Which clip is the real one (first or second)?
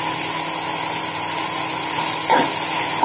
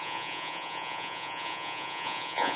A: first